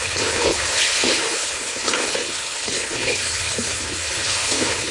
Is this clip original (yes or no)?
no